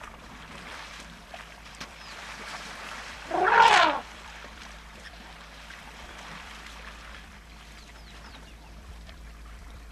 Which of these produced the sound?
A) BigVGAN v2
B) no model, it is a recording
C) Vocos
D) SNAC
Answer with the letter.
A